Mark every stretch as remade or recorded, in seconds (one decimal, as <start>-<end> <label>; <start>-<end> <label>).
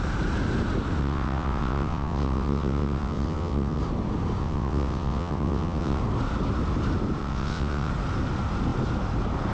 0.0-1.0 recorded; 1.0-3.8 remade; 3.8-4.4 recorded; 4.4-6.0 remade; 6.0-7.2 recorded; 7.2-7.9 remade; 7.9-9.5 recorded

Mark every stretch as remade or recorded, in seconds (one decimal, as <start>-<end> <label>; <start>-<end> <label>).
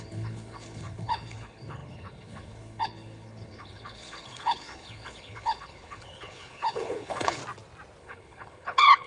0.0-7.4 remade; 7.4-8.0 recorded; 8.0-9.1 remade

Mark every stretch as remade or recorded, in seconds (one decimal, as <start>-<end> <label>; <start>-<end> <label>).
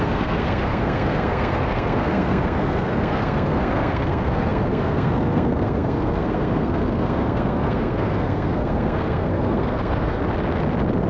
0.0-10.2 remade; 10.2-11.1 recorded